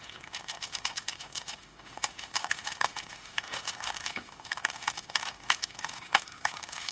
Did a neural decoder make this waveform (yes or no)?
yes